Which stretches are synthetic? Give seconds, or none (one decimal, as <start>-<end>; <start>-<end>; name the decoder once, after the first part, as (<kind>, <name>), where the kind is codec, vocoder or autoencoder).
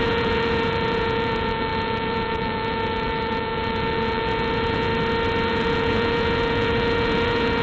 0.0-4.9 (vocoder, Vocos); 5.5-7.6